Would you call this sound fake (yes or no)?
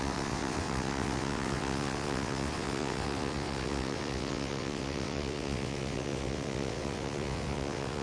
yes